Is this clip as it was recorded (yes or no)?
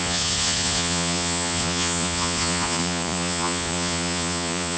no